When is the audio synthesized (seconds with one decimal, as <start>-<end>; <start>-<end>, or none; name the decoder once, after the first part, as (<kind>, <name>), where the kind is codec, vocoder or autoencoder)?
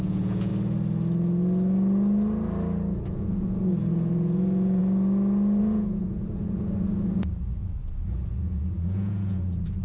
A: 0.0-0.5 (vocoder, Vocos); 3.1-4.8; 5.6-9.8